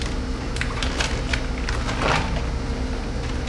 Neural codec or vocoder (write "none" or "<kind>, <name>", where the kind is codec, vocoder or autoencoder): none